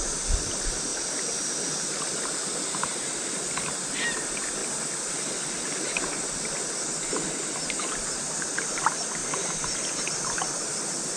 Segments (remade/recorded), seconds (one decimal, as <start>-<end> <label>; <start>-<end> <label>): 0.0-11.2 recorded